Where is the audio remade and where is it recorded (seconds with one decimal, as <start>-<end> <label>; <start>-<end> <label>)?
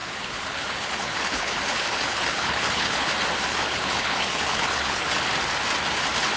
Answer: 0.0-3.1 remade; 3.1-3.5 recorded; 3.5-5.2 remade; 5.2-6.4 recorded